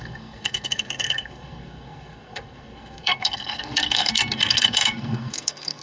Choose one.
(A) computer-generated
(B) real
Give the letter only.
A